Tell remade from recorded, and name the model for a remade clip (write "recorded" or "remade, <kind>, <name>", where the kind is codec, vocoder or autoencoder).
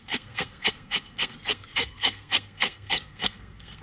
remade, codec, SNAC